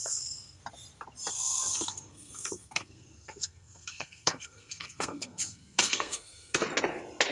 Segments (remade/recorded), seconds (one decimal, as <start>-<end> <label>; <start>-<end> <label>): 0.0-0.6 remade; 0.6-1.3 recorded; 1.3-6.6 remade; 6.6-7.3 recorded